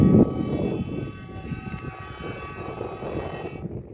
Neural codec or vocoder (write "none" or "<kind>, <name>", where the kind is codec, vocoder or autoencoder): none